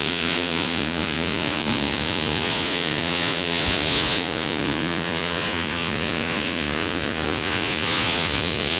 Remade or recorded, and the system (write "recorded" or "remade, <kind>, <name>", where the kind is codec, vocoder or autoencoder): remade, vocoder, Vocos